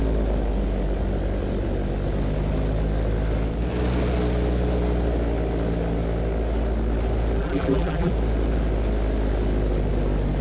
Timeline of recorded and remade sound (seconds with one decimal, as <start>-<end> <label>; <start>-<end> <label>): 0.0-7.4 recorded; 7.4-8.1 remade; 8.1-10.4 recorded